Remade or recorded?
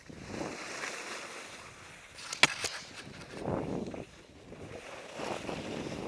recorded